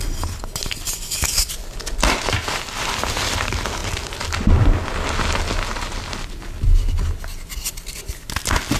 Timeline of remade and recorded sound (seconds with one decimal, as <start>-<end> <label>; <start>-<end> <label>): 0.0-8.8 recorded